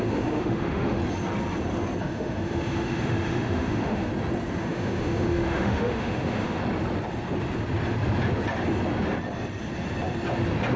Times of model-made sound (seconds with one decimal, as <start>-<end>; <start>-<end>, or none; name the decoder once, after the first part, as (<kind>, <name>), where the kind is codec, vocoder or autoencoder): 0.0-1.0 (autoencoder, DAC-VAE); 2.0-4.1; 4.6-6.6